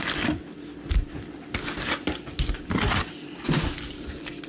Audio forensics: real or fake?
real